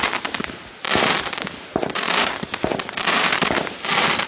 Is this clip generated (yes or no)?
yes